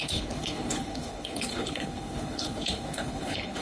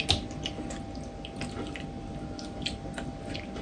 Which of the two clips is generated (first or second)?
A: first